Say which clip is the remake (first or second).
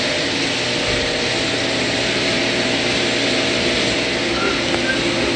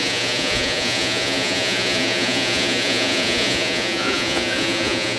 second